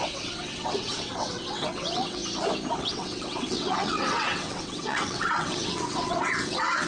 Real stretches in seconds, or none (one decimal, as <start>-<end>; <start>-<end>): 2.2-2.8